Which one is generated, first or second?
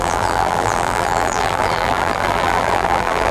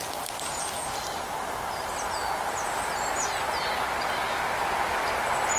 first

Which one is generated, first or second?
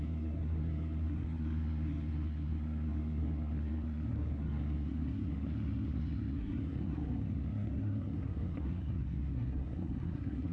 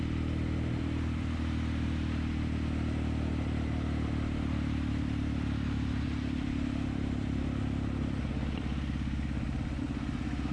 first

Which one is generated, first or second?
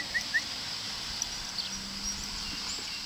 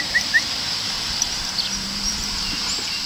second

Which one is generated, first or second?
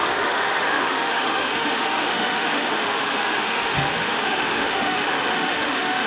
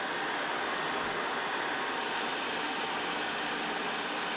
first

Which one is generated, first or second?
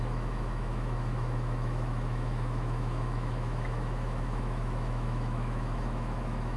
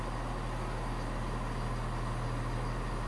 first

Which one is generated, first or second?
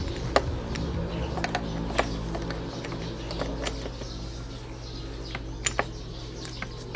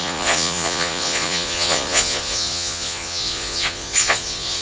second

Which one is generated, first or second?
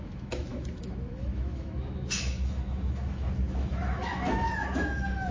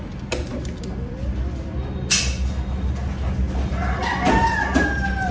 first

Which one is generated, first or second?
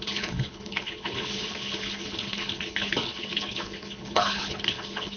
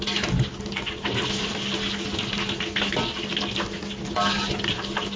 first